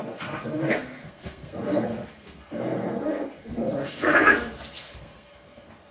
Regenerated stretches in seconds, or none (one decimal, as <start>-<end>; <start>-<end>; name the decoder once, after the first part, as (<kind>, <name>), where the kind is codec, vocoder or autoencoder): 0.0-5.9 (codec, SNAC)